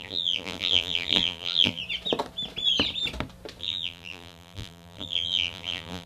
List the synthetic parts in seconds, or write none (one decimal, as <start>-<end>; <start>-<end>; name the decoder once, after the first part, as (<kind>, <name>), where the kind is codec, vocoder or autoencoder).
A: 0.0-1.8 (vocoder, BigVGAN v2); 3.6-6.1